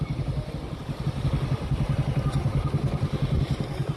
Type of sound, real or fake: real